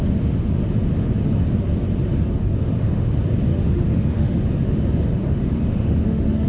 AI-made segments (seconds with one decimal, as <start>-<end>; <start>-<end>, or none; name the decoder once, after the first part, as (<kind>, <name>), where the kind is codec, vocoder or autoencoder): 2.4-3.1 (autoencoder, DAC-VAE); 3.5-4.4; 5.2-6.5